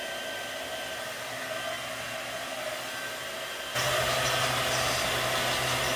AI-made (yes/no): no